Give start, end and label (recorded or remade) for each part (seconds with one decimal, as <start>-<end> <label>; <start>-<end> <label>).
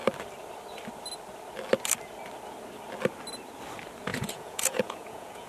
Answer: 0.0-4.1 recorded; 4.1-5.5 remade